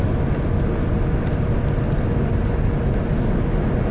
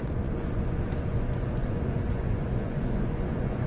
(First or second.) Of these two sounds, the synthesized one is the second